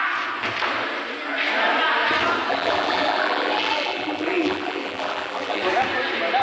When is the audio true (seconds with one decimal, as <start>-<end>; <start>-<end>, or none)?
0.0-2.5; 5.6-6.4